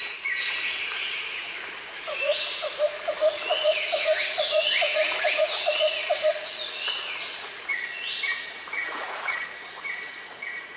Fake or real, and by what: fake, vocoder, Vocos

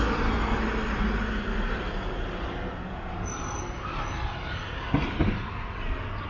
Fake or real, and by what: real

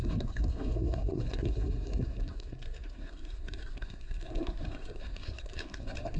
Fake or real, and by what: fake, codec, SNAC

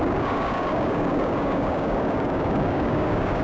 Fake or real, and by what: fake, codec, DAC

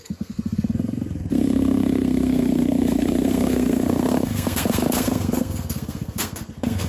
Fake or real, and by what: fake, codec, SNAC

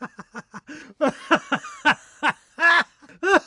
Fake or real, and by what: real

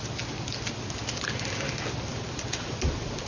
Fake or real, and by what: real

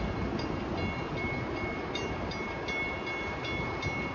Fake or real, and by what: real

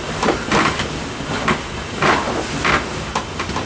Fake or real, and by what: real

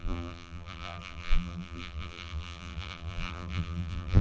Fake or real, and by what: fake, vocoder, BigVGAN v2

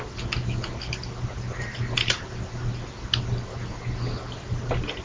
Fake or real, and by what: real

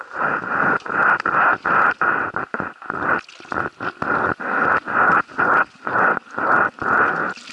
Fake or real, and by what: real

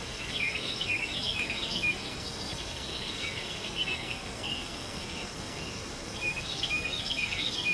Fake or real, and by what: fake, codec, SNAC